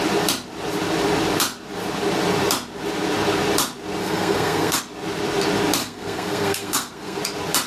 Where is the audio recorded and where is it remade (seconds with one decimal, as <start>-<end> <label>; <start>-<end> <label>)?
0.0-4.0 recorded; 4.0-4.8 remade; 4.8-5.8 recorded; 5.8-7.2 remade; 7.2-7.7 recorded